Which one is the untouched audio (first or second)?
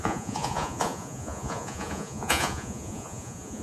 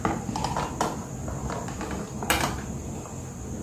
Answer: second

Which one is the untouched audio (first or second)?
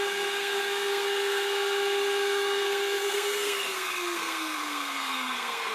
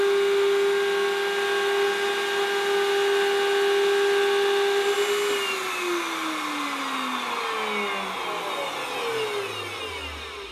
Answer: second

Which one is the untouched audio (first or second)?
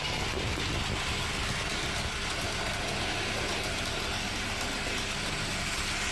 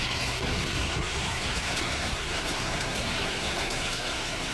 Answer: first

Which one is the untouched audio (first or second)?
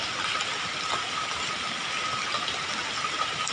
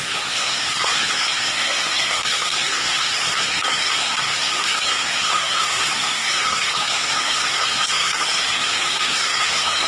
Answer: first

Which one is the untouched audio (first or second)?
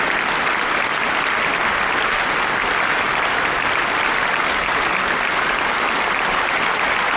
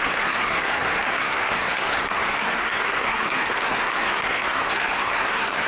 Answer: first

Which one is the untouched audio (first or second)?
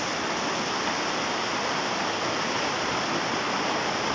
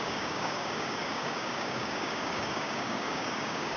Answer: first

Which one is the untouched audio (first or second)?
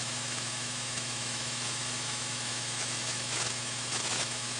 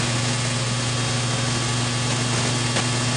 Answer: second